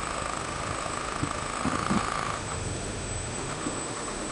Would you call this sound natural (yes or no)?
no